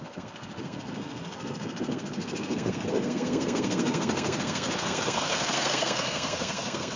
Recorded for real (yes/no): no